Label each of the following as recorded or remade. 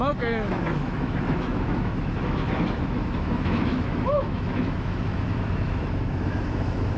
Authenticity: remade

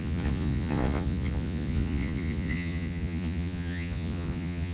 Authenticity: remade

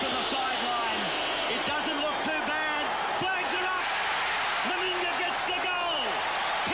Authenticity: recorded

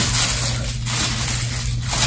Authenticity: recorded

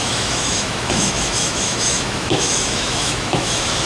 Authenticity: remade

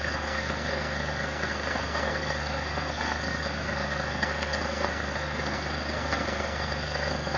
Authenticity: remade